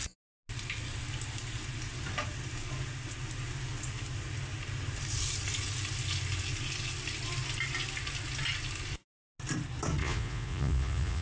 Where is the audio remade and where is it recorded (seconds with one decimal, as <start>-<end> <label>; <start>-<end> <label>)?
0.0-10.0 recorded; 10.0-11.2 remade